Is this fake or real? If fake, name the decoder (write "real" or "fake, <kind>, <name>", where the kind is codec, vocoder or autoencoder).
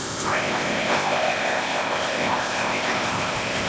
fake, codec, ZipCodec